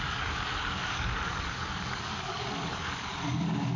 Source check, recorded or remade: remade